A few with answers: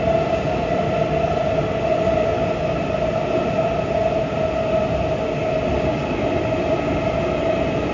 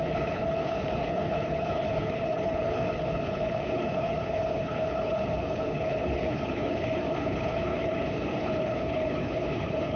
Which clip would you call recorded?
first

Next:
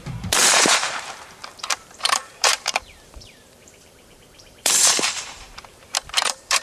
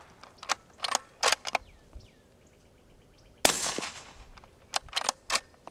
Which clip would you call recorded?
second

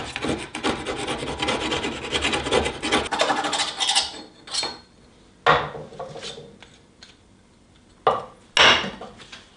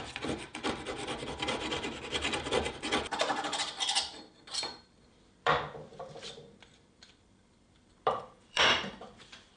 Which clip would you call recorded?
first